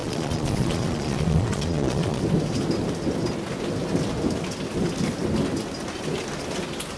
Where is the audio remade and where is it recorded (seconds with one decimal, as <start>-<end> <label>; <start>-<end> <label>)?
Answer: 0.0-2.2 remade; 2.2-7.0 recorded